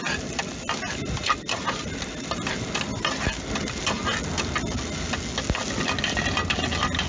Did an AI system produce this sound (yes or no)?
no